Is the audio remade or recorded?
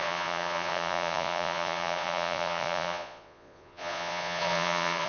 remade